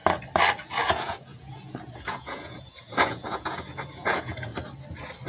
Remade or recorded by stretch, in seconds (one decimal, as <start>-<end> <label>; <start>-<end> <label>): 0.0-0.9 recorded; 0.9-4.5 remade; 4.5-5.3 recorded